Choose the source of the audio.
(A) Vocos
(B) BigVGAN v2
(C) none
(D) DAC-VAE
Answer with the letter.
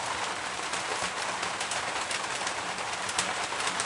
B